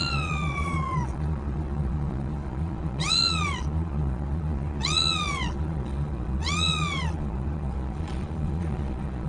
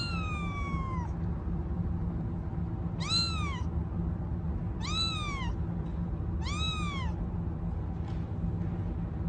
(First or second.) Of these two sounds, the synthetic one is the first